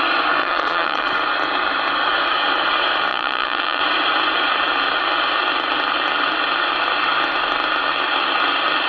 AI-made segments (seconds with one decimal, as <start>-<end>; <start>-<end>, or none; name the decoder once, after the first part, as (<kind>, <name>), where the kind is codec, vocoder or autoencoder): 0.4-1.1 (vocoder, Vocos); 3.1-3.8